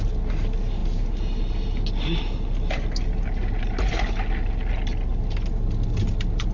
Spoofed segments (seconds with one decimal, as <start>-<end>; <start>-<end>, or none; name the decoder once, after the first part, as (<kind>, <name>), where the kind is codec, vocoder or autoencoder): none